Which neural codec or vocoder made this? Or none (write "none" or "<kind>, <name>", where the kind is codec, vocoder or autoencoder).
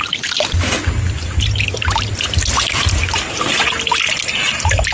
none